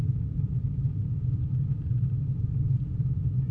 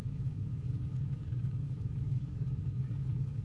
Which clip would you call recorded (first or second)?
first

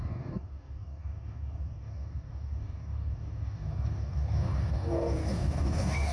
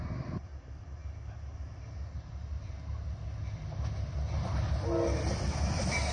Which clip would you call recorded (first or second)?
second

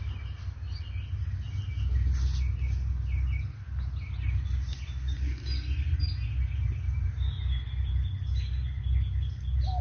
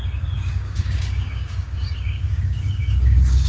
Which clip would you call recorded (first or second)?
first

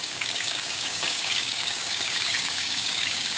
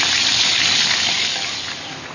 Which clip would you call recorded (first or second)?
second